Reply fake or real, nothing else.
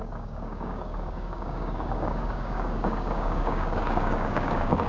fake